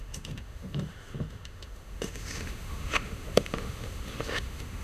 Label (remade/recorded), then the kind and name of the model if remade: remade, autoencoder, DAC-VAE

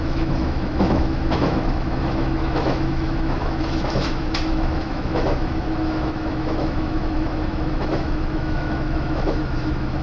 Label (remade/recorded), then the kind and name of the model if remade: remade, autoencoder, DAC-VAE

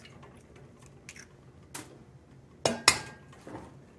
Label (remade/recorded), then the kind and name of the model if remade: recorded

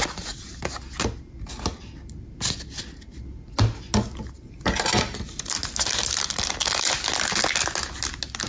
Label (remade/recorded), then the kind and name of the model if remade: recorded